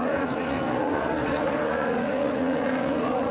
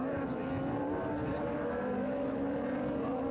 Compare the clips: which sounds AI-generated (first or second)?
first